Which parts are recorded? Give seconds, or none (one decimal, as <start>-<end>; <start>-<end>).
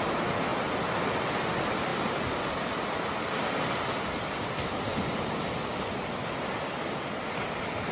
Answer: 0.0-7.9